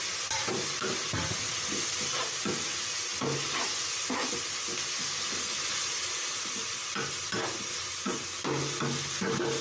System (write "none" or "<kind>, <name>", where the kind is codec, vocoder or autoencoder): none